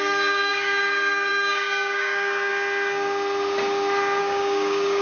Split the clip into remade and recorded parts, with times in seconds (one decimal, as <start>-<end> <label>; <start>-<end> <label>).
0.0-2.5 remade; 2.5-4.2 recorded; 4.2-5.0 remade